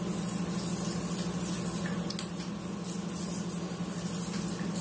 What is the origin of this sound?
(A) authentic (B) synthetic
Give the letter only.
A